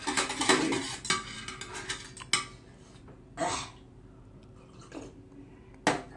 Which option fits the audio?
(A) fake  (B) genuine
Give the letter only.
B